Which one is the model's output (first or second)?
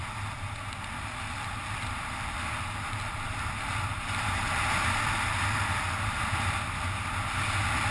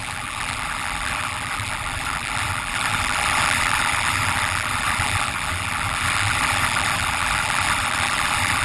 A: second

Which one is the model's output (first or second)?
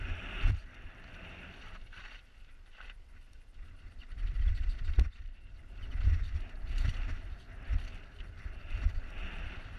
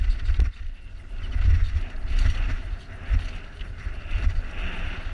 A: first